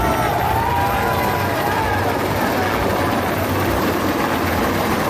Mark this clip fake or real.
real